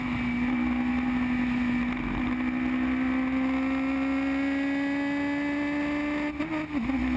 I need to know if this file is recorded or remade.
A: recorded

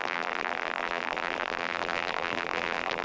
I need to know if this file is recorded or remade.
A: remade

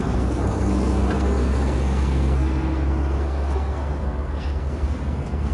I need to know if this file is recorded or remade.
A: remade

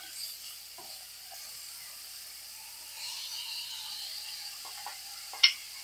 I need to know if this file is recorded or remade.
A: recorded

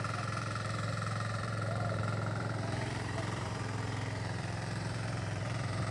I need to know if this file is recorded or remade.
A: remade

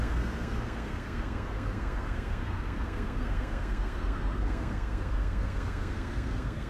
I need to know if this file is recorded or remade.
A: remade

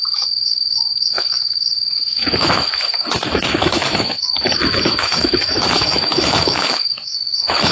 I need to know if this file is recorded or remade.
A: remade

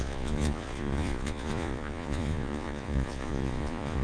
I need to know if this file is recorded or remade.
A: remade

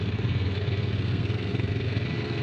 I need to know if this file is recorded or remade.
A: remade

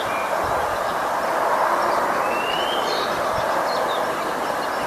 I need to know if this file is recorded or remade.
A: recorded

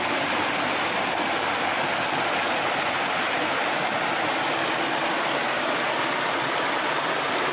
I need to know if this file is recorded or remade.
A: recorded